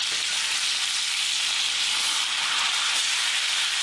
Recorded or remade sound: recorded